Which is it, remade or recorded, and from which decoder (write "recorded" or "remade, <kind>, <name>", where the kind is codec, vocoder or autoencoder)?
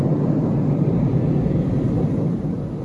recorded